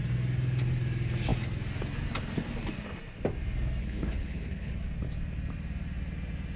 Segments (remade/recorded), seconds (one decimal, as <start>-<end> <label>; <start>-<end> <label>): 0.0-3.8 recorded; 3.8-4.7 remade; 4.7-6.6 recorded